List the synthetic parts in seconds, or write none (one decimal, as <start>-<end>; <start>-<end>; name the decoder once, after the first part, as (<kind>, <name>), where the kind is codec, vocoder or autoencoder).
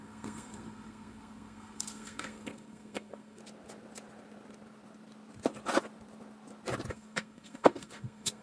0.0-3.4 (codec, SNAC); 6.9-8.4